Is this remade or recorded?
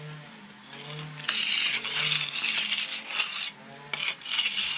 recorded